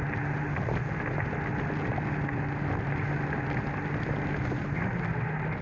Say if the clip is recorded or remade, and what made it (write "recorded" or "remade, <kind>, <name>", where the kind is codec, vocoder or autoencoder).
recorded